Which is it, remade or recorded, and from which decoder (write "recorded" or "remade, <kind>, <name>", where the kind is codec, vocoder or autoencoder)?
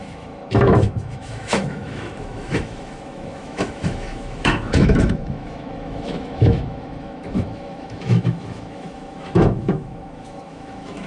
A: remade, autoencoder, DAC-VAE